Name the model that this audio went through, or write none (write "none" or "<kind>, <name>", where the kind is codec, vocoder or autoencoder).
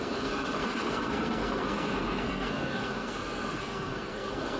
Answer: codec, SNAC